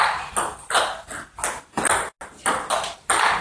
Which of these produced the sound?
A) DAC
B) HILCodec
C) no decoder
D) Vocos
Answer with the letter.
C